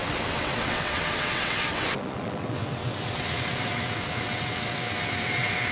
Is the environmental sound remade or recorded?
remade